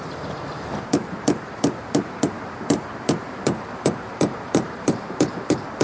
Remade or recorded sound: remade